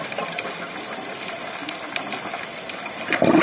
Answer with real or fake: real